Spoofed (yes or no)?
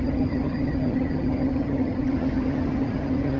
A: yes